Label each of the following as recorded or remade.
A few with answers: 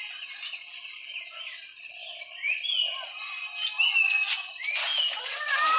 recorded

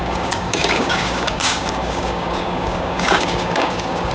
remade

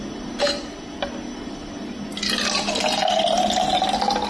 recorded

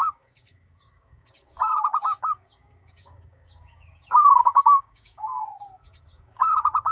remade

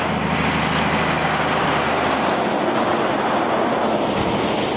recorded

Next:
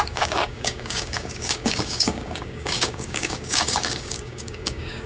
remade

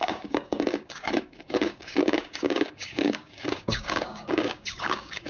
remade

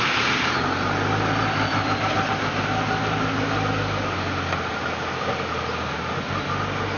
recorded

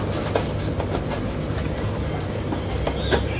recorded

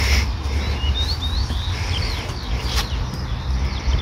recorded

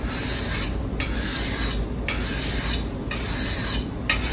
recorded